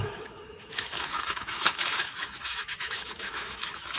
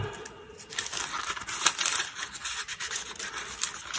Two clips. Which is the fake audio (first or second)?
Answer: first